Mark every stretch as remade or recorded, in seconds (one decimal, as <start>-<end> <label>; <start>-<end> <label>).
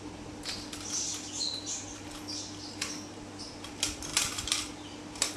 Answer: 0.0-5.4 recorded